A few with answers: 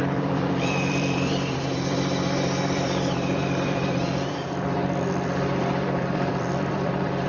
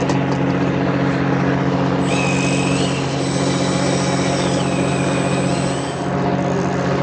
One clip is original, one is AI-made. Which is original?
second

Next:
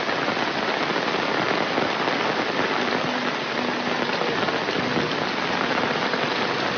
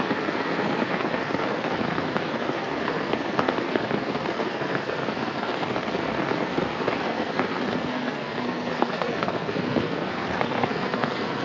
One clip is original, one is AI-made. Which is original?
first